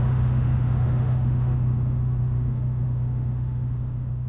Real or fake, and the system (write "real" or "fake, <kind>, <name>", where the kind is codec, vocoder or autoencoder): fake, autoencoder, DAC-VAE